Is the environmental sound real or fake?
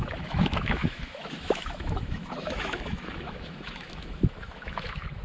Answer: fake